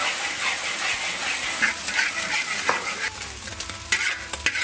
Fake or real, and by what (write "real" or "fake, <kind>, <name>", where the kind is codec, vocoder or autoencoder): real